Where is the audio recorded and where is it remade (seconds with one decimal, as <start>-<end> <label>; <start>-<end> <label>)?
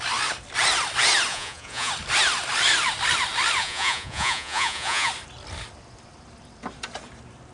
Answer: 0.0-1.3 recorded; 1.3-1.9 remade; 1.9-3.6 recorded; 3.6-5.1 remade; 5.1-7.5 recorded